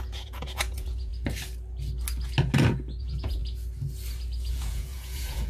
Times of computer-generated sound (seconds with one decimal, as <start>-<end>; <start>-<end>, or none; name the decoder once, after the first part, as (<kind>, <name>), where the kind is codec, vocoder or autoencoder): 0.0-1.1 (vocoder, Vocos); 3.0-3.4; 4.5-5.5